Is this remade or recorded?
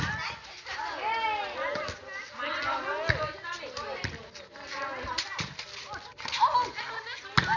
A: recorded